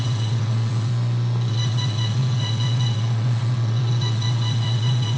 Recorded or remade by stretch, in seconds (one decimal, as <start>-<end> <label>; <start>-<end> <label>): 0.0-0.9 remade; 0.9-1.5 recorded; 1.5-5.2 remade